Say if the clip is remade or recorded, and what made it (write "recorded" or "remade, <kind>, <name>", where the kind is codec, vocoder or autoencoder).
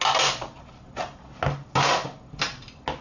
recorded